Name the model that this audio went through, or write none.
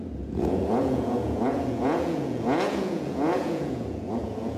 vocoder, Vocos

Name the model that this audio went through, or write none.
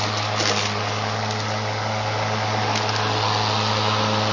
none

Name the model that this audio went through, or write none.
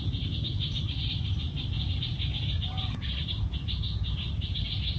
none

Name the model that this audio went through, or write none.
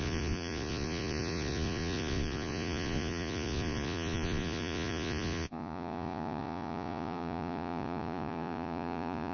vocoder, Vocos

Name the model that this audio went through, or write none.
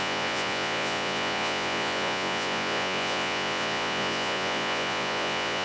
vocoder, Vocos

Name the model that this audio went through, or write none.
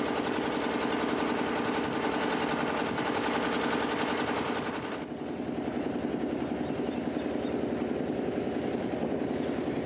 none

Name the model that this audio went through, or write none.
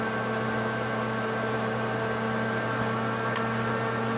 none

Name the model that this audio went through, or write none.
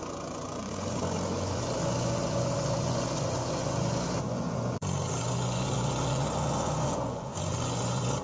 vocoder, Vocos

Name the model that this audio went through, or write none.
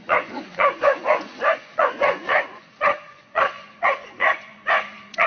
vocoder, Vocos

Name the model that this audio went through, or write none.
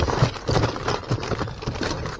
none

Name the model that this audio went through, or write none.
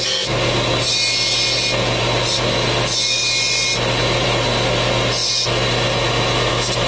none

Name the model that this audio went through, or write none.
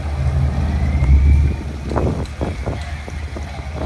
none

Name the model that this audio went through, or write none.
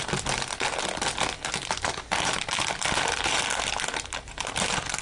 none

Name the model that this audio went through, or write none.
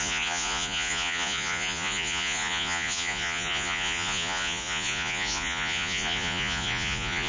vocoder, Vocos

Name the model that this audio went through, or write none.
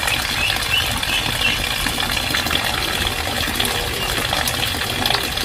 none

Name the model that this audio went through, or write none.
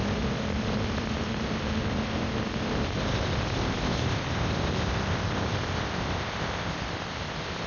none